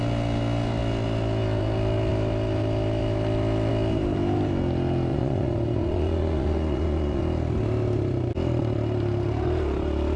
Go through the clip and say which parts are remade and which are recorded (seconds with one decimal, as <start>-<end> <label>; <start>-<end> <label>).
0.0-5.1 recorded; 5.1-7.2 remade; 7.2-10.2 recorded